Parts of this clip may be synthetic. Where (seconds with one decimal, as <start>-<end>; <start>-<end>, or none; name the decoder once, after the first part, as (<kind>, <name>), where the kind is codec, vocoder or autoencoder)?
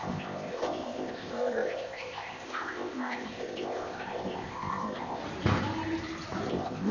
0.0-5.2 (codec, ZipCodec); 6.5-6.9